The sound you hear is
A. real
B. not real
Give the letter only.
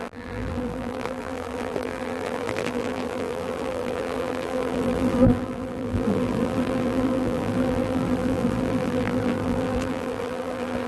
B